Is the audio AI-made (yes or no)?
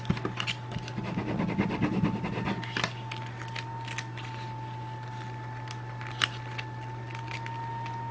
no